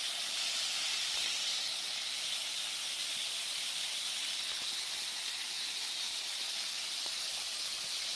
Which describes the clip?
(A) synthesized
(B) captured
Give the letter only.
B